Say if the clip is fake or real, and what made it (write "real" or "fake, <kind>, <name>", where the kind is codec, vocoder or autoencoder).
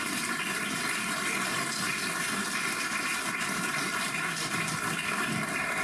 real